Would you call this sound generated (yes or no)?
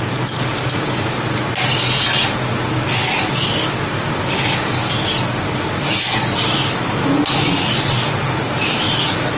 no